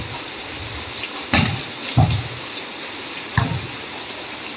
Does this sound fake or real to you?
real